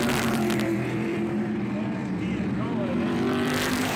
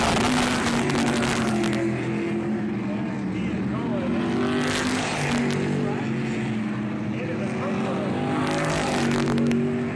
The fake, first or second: first